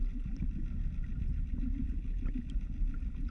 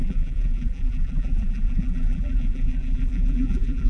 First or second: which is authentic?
first